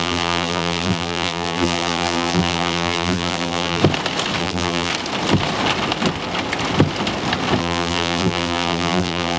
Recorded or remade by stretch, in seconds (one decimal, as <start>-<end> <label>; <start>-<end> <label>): 0.0-3.8 remade; 3.8-4.4 recorded; 4.4-4.9 remade; 4.9-7.6 recorded; 7.6-9.4 remade